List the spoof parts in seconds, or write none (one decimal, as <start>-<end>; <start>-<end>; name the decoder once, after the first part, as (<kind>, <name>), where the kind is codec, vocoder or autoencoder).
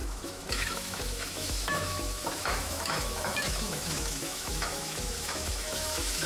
0.0-6.3 (autoencoder, DAC-VAE)